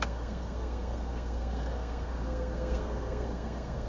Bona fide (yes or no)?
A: no